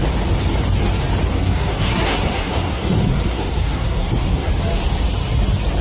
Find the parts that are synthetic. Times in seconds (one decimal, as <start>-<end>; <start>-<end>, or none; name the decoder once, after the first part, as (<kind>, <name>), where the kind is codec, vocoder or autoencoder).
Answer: 1.3-4.5 (codec, SNAC)

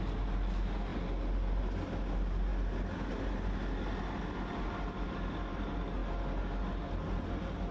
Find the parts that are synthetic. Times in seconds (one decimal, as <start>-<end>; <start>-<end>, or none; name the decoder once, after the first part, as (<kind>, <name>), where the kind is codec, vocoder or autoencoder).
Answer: none